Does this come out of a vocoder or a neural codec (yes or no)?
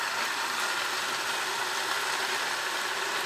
yes